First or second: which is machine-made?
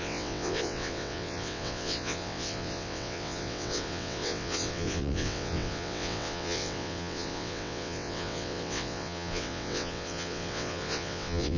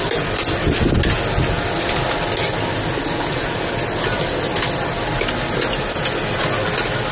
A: first